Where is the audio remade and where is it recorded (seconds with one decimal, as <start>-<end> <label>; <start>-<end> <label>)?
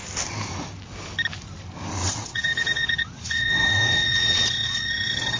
0.0-2.0 recorded; 2.0-5.4 remade